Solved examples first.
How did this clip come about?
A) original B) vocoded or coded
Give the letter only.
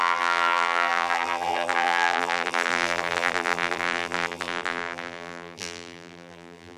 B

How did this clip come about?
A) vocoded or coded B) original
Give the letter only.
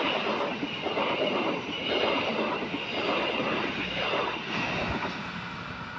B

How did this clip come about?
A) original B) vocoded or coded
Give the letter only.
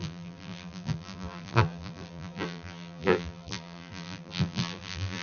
B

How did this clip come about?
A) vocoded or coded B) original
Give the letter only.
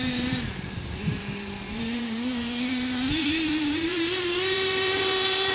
A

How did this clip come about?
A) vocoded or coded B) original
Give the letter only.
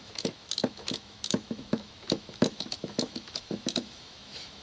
A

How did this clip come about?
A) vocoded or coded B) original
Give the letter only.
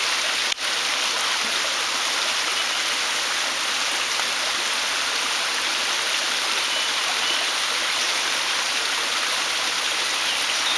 B